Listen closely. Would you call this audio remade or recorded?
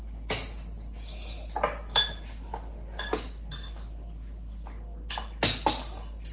recorded